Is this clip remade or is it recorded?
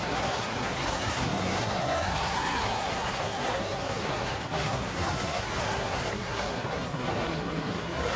remade